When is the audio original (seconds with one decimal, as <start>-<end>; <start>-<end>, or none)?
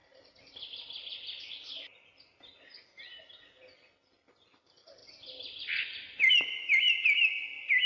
1.8-5.0; 6.3-7.9